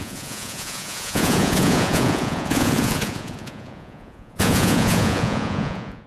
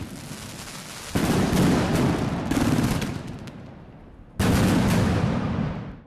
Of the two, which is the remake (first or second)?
first